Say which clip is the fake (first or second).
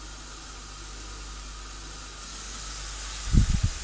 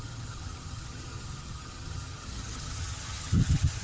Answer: second